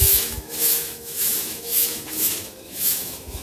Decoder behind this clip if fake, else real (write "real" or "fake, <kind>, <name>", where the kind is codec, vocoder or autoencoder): fake, autoencoder, DAC-VAE